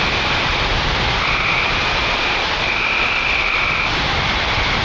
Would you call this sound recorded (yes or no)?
no